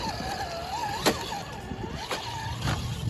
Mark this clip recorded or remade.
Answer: recorded